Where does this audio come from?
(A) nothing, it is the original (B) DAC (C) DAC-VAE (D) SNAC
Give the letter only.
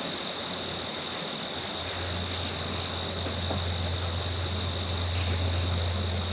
A